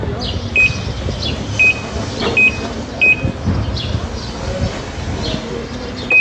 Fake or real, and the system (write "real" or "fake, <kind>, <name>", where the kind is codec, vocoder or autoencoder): real